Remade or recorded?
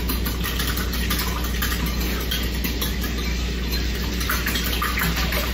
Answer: recorded